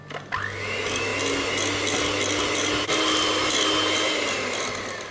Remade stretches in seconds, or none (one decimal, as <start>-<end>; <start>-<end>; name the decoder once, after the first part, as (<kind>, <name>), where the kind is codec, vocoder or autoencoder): none